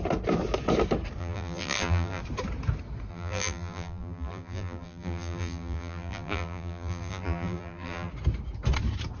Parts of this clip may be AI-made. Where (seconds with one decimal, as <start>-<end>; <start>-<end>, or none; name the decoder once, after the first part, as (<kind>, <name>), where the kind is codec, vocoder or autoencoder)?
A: 1.2-2.2 (vocoder, BigVGAN v2); 3.1-8.1